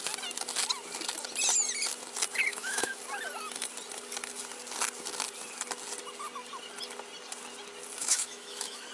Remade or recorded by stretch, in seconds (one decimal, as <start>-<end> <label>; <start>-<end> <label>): 0.0-2.5 recorded; 2.5-3.0 remade; 3.0-8.0 recorded; 8.0-8.9 remade